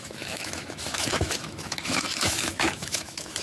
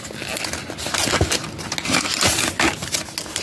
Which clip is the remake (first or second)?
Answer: first